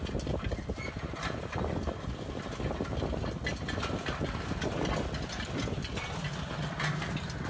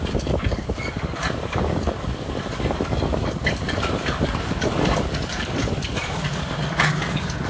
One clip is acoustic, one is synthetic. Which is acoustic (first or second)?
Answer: first